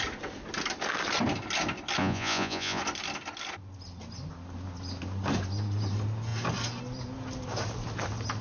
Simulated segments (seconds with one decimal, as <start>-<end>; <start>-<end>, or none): 2.0-2.8